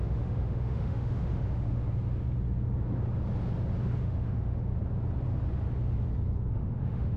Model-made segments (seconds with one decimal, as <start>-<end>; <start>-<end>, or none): 0.0-1.8; 4.0-4.7; 6.5-7.2